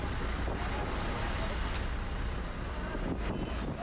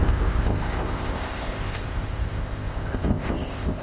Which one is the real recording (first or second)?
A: first